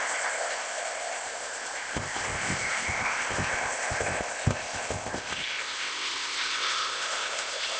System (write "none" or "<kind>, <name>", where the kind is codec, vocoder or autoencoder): codec, ZipCodec